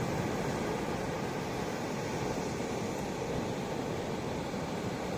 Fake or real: real